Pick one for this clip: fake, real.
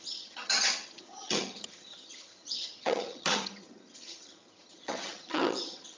fake